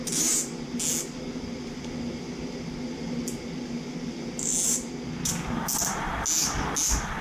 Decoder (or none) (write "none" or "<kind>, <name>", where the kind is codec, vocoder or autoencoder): none